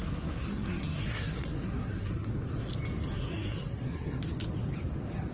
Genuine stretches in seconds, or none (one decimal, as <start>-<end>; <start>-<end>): 2.3-3.1; 4.2-5.3